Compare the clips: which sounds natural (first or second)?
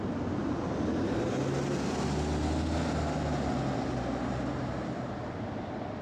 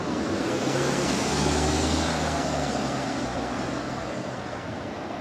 first